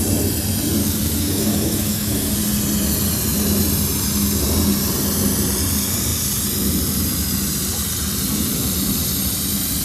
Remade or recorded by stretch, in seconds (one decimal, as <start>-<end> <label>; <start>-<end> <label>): 0.0-0.8 recorded; 0.8-2.3 remade; 2.3-9.8 recorded